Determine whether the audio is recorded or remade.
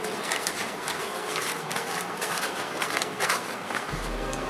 remade